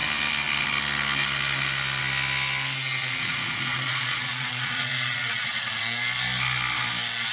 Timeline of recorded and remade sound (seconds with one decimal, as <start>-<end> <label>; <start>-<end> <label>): 0.0-3.0 recorded; 3.0-5.7 remade; 5.7-7.3 recorded